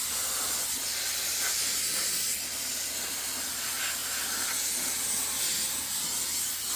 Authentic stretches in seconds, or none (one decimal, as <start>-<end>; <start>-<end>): 0.0-6.8